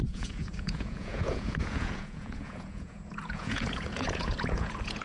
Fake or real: fake